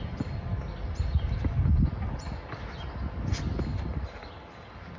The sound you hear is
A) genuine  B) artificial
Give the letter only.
A